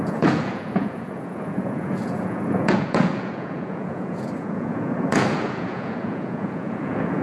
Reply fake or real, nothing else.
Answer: fake